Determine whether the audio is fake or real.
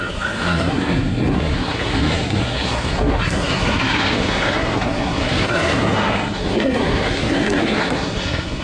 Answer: fake